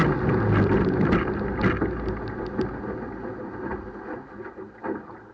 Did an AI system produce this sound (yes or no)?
no